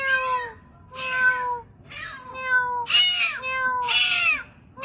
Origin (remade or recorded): recorded